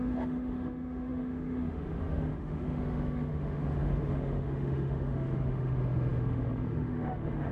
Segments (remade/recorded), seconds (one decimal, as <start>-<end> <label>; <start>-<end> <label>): 0.0-7.5 remade